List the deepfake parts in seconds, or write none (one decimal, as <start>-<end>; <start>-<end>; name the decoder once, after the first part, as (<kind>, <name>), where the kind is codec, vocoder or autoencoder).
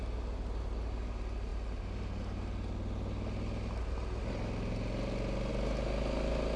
none